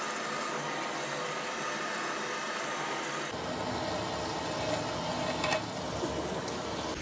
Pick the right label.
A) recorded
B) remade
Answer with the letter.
A